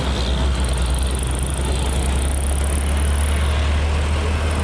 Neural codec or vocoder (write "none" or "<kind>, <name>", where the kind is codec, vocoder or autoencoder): none